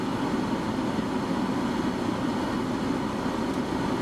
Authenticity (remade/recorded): recorded